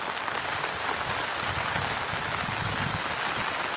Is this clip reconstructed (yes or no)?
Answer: no